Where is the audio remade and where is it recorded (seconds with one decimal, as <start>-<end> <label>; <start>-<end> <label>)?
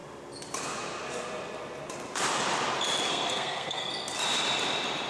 0.0-3.1 recorded; 3.1-3.9 remade; 3.9-5.1 recorded